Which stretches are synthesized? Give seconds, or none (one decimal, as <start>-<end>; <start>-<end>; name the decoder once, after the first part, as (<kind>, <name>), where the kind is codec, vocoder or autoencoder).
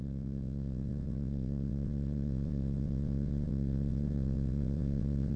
0.0-5.4 (vocoder, WaveNeXt)